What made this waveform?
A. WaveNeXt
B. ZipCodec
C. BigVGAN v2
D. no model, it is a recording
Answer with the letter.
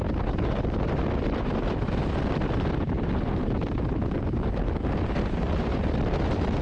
C